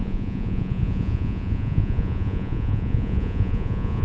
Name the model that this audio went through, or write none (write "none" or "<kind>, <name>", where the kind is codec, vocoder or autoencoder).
vocoder, Vocos